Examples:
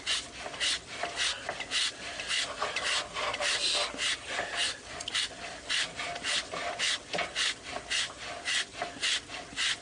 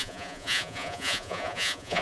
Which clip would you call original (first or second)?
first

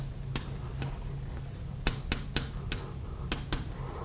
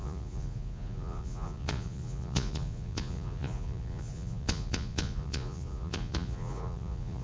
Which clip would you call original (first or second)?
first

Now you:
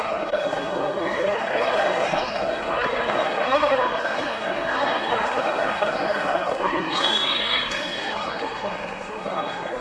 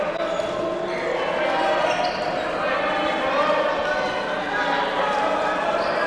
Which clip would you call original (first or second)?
second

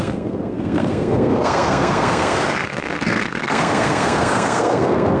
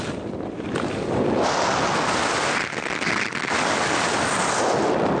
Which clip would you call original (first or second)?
second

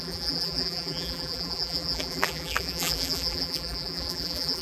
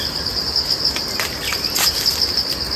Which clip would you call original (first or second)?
second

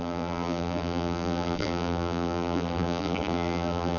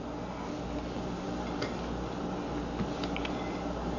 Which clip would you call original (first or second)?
second